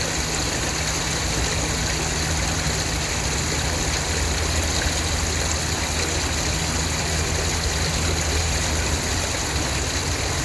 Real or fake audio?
real